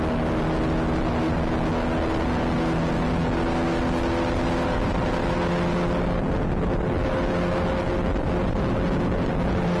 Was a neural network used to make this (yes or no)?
no